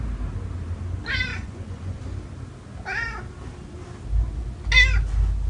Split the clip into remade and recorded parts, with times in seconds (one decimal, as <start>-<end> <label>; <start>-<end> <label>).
0.0-1.3 recorded; 1.3-2.0 remade; 2.0-5.5 recorded